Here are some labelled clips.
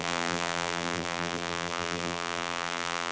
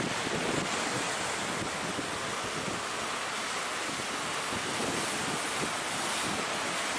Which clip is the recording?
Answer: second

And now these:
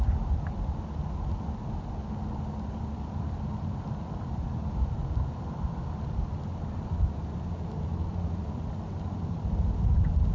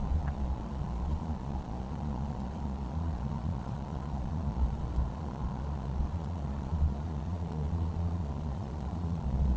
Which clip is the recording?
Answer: first